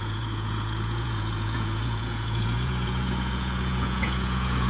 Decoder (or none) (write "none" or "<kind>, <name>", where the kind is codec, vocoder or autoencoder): vocoder, Vocos